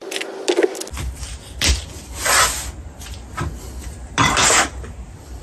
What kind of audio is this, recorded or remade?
recorded